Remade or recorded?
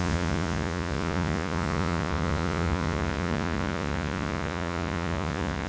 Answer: remade